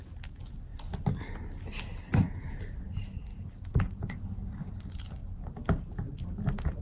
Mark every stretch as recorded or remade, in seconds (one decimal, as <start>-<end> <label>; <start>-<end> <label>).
0.0-3.3 recorded; 3.3-4.2 remade; 4.2-6.8 recorded